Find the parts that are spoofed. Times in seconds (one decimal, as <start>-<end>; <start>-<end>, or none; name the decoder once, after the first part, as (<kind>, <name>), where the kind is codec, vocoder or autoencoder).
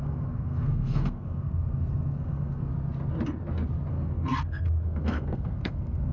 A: 0.0-2.7 (codec, SNAC); 3.9-6.1